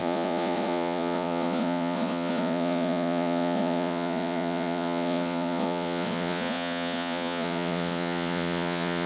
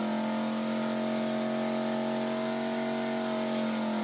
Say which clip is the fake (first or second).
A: first